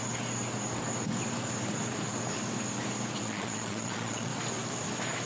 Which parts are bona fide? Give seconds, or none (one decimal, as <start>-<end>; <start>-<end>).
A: 0.0-3.2; 4.3-5.3